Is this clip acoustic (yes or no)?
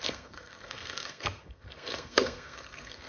no